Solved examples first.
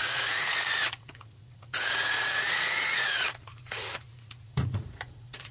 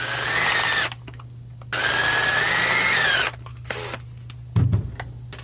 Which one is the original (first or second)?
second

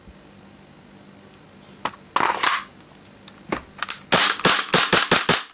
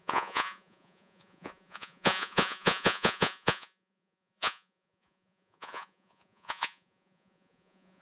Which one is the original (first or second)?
first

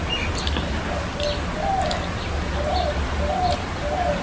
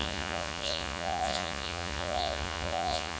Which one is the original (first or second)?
first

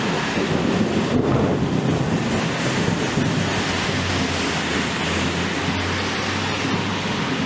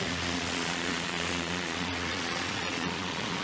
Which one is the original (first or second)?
first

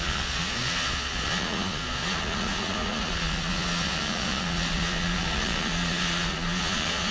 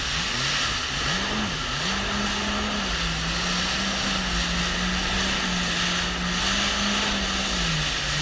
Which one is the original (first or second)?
second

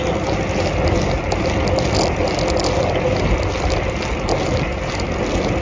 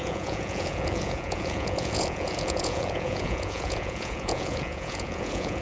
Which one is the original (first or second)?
first